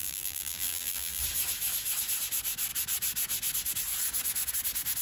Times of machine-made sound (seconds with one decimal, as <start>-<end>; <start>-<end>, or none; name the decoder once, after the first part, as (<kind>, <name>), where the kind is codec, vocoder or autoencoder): 0.0-1.2 (vocoder, BigVGAN v2)